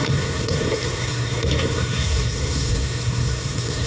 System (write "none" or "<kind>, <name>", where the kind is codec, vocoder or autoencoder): codec, SNAC